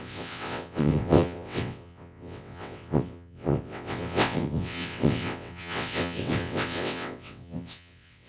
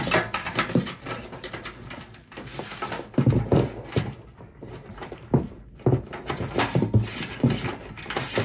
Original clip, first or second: second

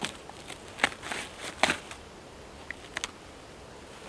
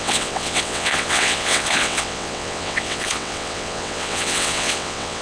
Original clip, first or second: first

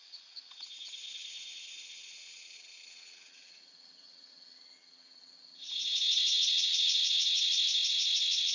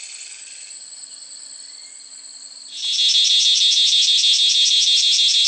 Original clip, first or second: second